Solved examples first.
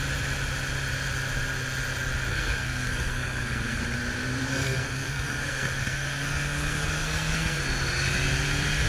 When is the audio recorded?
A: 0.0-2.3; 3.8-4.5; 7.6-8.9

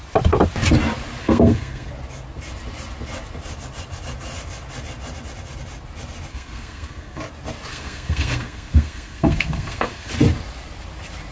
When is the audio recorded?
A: 0.0-1.2; 1.9-6.3; 7.2-7.7; 10.1-11.3

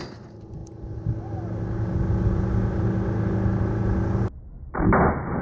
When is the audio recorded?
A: 0.0-5.4

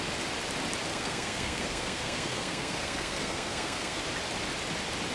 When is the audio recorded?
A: 0.0-0.9; 4.0-5.1

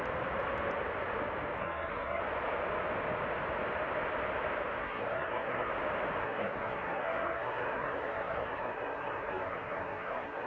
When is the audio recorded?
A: 0.0-1.6; 2.2-4.8; 5.7-6.2